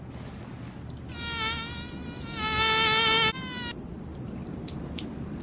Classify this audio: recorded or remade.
recorded